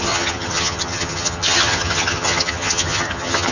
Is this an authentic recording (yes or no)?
no